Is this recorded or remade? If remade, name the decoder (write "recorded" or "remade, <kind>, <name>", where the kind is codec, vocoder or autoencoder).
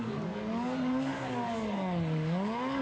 remade, codec, DAC